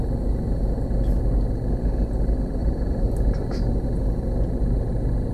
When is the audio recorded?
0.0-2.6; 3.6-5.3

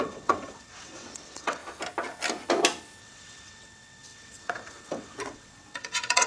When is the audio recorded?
1.6-3.0